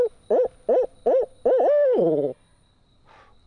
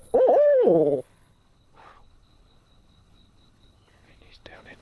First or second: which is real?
first